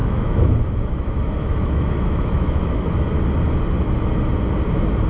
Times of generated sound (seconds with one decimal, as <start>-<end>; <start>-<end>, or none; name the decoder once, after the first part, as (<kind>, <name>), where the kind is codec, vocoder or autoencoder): 0.0-3.1 (autoencoder, DAC-VAE)